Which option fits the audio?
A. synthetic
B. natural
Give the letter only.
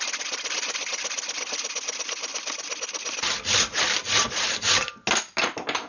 B